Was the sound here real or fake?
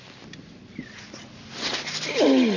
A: real